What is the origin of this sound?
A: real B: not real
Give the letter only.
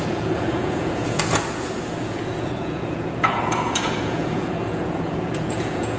B